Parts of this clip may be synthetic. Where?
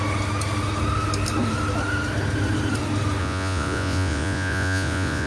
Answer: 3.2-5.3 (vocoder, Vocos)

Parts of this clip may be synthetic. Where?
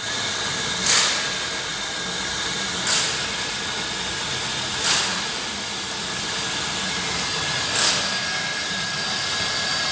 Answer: 5.1-7.0 (vocoder, BigVGAN v2)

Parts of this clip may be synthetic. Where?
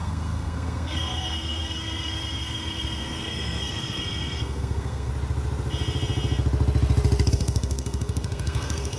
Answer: 0.0-5.1 (codec, SNAC); 7.3-9.0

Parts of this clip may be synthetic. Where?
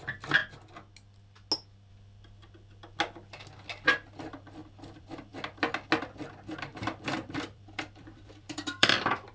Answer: 4.6-5.3 (vocoder, BigVGAN v2); 6.7-9.3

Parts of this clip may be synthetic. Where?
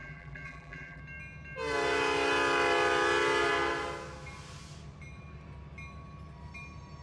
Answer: 0.0-1.0 (vocoder, BigVGAN v2)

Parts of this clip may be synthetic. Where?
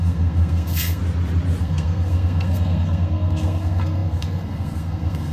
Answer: 0.0-1.0 (codec, SNAC); 1.6-5.3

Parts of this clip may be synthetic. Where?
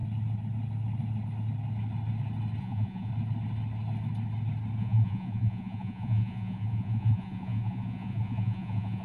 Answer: 2.6-3.1 (vocoder, Vocos); 4.8-9.0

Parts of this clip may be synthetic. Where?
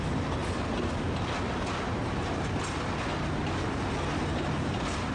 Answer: none